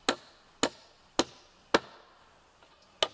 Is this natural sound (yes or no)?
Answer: yes